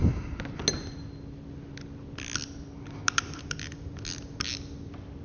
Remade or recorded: recorded